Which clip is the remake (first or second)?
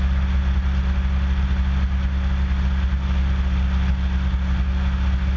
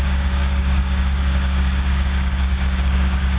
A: second